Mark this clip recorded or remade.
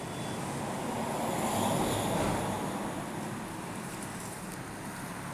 recorded